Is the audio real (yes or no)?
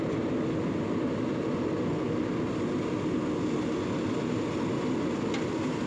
yes